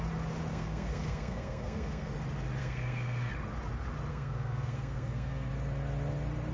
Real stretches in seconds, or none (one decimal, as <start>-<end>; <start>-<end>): 0.0-0.5; 2.1-2.6; 3.3-4.1; 5.5-6.5